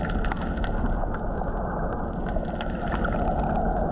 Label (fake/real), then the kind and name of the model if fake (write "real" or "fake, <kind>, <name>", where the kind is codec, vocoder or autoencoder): real